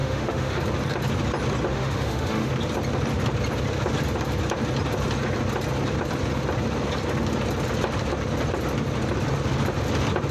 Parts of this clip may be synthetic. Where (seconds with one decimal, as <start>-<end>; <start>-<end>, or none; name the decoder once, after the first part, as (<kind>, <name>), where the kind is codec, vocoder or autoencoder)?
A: 0.0-0.6 (autoencoder, DAC-VAE); 1.7-2.5